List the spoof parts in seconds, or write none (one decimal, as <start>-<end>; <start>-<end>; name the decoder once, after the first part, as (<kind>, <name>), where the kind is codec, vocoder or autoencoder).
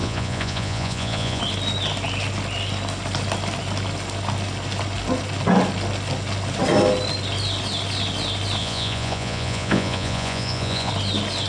0.0-1.4 (vocoder, Vocos); 8.6-10.9